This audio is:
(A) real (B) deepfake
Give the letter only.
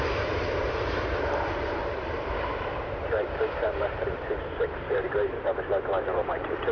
B